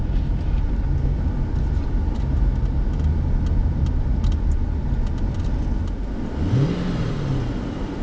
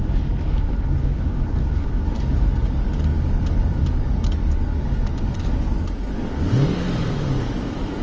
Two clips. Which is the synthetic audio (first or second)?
second